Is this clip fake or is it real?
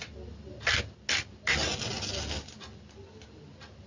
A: real